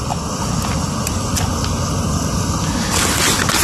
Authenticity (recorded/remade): recorded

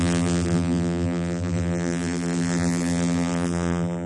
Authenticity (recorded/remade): remade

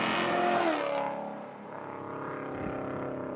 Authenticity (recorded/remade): recorded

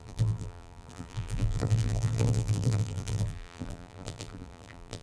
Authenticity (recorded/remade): remade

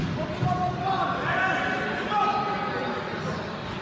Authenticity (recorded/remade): recorded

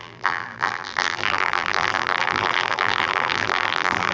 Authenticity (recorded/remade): remade